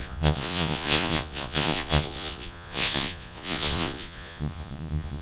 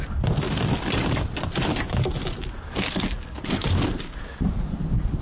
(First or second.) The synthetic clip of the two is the first